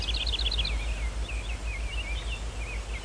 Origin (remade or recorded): recorded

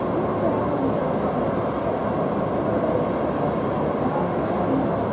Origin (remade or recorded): recorded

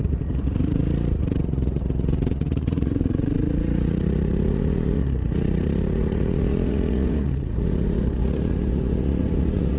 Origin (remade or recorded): remade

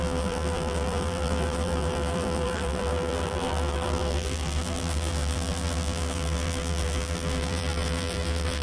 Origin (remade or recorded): remade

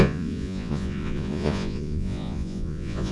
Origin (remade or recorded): remade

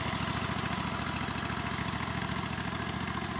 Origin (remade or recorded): recorded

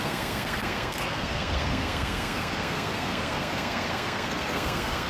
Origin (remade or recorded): remade